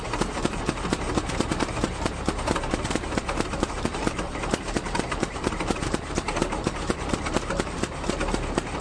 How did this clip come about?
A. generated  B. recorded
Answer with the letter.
A